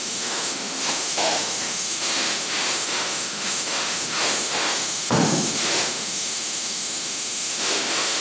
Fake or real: fake